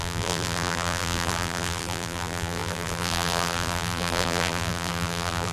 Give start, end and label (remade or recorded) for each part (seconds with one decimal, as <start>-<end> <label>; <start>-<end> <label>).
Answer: 0.0-5.5 remade